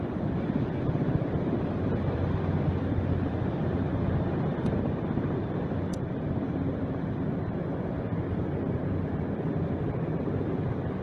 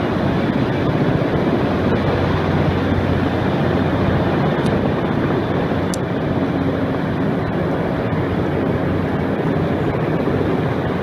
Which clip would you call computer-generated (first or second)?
first